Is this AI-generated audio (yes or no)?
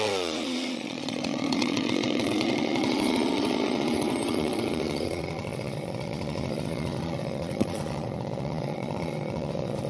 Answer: yes